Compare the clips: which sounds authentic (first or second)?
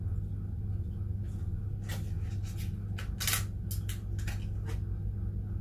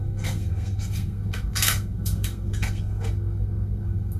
first